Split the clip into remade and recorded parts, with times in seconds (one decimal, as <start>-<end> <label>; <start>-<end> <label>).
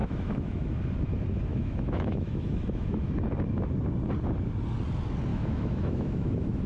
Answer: 0.0-0.8 remade; 0.8-1.5 recorded; 1.5-3.1 remade; 3.1-5.3 recorded; 5.3-6.7 remade